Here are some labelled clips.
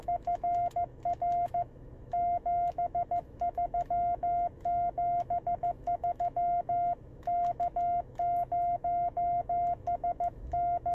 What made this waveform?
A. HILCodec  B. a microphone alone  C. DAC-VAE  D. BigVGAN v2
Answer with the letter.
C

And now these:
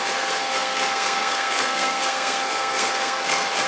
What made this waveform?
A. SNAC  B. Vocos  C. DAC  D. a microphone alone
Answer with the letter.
A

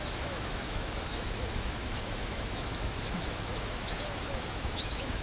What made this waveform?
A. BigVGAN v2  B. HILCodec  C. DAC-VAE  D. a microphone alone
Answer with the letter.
C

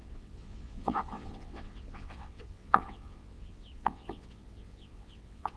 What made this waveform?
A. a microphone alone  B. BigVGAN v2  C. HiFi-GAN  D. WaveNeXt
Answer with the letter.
D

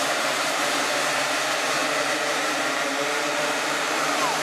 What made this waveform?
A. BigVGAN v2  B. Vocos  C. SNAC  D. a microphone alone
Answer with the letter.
A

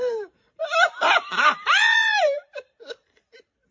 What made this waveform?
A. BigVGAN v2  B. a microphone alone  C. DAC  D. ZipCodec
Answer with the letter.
A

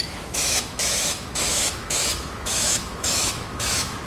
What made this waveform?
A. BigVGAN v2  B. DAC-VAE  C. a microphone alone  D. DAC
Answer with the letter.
B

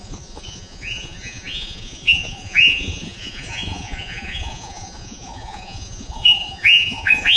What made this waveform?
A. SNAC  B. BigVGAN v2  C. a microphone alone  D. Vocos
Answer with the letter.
D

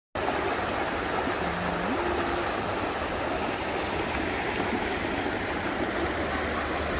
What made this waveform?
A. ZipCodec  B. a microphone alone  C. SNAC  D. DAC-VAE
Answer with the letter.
B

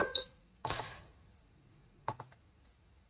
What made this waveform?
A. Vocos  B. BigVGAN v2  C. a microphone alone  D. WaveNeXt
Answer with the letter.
A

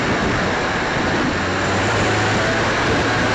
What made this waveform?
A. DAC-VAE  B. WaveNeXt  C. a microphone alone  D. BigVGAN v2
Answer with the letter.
D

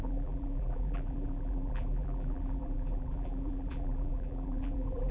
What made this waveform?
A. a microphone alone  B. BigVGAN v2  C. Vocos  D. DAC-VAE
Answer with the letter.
B